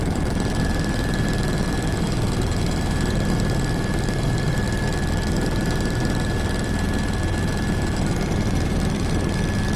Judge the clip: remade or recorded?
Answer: remade